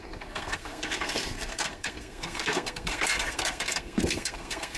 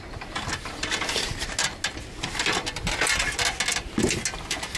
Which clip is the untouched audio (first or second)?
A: second